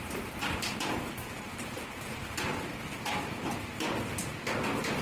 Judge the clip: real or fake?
real